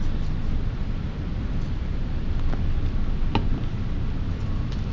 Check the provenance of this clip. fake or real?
real